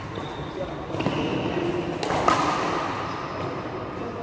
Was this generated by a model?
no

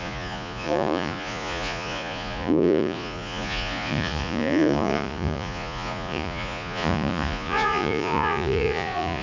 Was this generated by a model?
yes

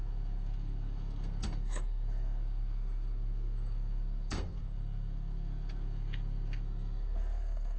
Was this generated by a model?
yes